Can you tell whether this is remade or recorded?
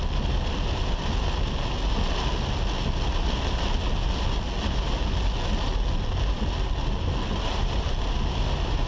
recorded